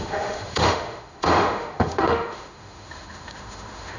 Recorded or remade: remade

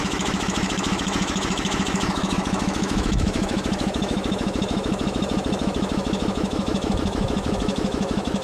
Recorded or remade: remade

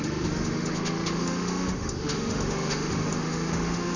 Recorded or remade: remade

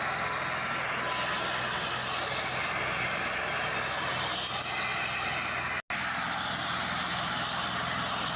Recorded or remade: recorded